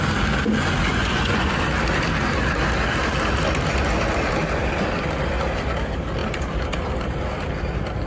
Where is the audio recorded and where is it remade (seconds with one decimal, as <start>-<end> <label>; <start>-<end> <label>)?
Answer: 0.0-0.9 recorded; 0.9-1.5 remade; 1.5-8.1 recorded